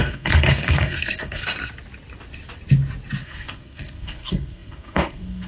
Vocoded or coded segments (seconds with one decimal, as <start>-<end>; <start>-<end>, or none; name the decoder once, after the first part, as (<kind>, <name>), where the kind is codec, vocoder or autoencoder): 0.0-1.4 (codec, SNAC); 3.2-5.5